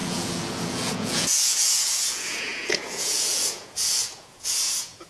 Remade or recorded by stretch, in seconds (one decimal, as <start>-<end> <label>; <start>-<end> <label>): 0.0-5.1 remade